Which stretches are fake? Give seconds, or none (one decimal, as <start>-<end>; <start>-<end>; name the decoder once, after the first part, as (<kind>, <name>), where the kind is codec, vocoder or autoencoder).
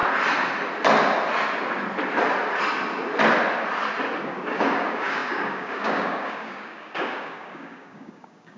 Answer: 4.2-8.6 (codec, DAC)